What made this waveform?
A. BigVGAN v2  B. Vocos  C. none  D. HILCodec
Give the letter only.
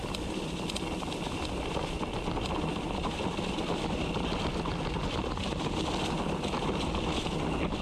C